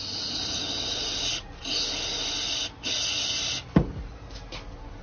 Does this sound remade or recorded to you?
recorded